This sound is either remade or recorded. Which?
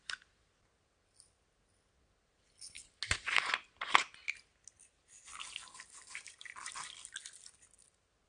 recorded